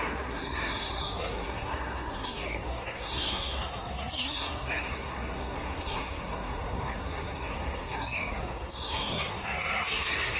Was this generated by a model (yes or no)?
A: yes